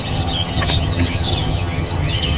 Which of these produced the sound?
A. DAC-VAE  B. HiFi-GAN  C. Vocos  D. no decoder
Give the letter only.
B